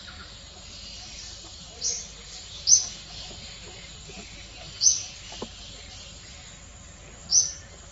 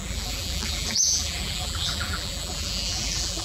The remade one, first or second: second